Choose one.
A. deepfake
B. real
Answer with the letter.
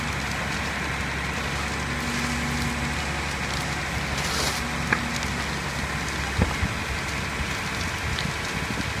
B